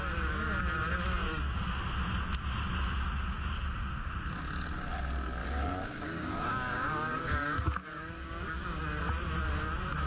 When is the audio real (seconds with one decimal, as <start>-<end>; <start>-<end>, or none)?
0.0-1.2; 1.8-5.4; 8.8-10.1